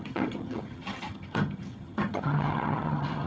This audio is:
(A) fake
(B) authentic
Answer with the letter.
A